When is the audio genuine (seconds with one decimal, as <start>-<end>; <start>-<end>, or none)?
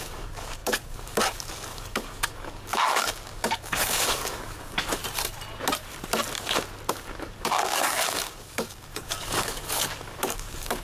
5.0-6.9